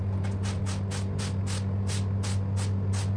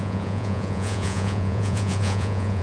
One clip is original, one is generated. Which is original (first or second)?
first